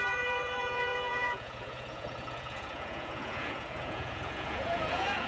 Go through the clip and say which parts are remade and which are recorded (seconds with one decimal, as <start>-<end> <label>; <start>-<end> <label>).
0.0-5.3 remade